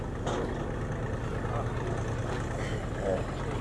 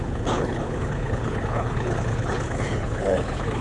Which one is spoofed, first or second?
second